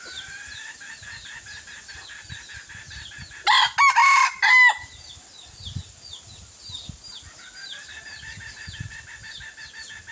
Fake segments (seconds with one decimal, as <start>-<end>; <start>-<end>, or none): none